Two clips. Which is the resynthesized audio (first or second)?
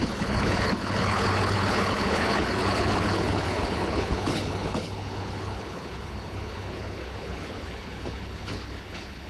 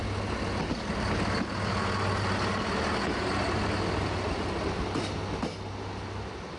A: first